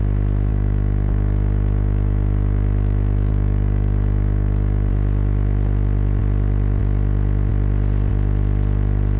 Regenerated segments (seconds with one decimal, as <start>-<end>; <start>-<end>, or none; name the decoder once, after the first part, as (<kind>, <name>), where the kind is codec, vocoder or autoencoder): 0.5-4.9 (autoencoder, DAC-VAE)